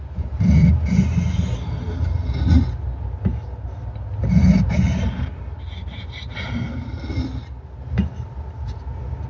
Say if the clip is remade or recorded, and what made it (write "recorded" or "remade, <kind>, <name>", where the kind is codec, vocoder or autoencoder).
recorded